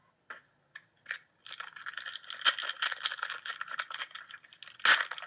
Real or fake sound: real